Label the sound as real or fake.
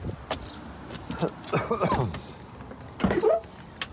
real